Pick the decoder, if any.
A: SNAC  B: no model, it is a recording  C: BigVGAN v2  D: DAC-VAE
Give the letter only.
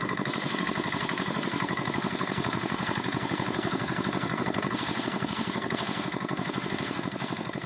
A